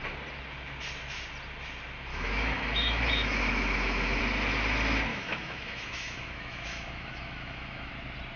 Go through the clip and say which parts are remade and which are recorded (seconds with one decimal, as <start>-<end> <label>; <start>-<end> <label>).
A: 0.0-2.1 recorded; 2.1-4.2 remade; 4.2-5.1 recorded; 5.1-7.9 remade; 7.9-8.4 recorded